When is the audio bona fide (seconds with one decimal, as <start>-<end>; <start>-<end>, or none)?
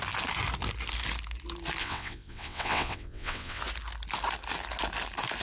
0.0-1.8; 3.6-5.4